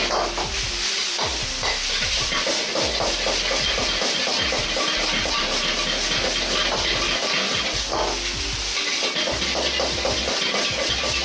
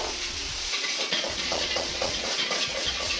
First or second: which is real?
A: first